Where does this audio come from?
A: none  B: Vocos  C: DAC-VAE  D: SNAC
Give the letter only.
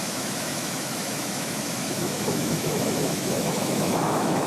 C